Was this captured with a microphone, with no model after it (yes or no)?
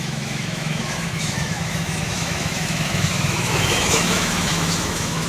no